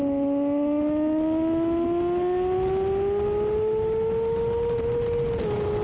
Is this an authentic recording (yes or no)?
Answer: yes